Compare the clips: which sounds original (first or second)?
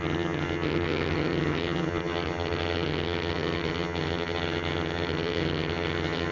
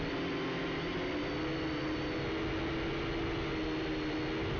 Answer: second